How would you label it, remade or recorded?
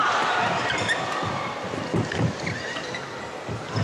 recorded